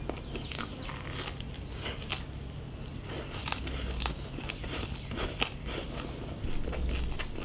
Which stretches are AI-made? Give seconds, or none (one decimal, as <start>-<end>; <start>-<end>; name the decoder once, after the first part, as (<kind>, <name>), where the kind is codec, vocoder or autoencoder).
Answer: none